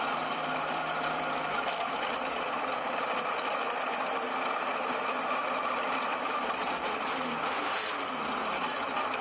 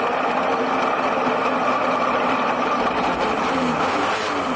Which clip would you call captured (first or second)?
second